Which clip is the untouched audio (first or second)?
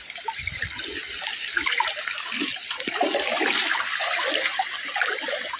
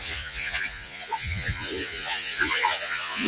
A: first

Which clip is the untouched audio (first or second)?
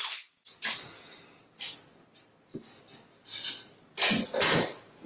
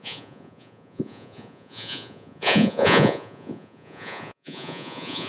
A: first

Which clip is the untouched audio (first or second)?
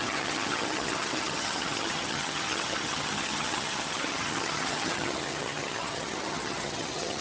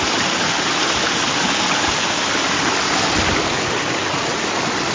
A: second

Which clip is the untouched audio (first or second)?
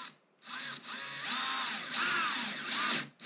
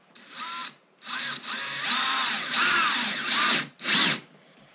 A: first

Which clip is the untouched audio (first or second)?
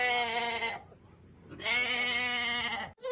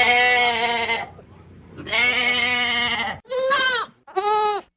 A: first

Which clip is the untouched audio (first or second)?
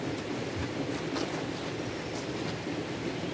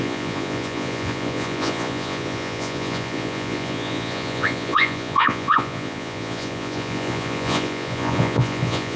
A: first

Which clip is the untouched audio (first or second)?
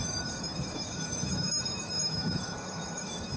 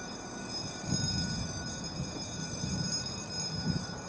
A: second